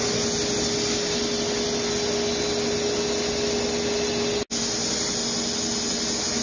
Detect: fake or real real